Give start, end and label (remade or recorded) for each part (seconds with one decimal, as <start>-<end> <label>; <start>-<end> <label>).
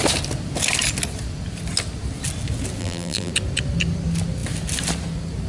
0.0-2.8 recorded; 2.8-3.3 remade; 3.3-5.5 recorded